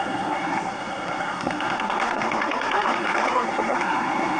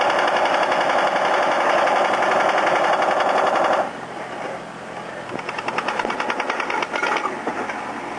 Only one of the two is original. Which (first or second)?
second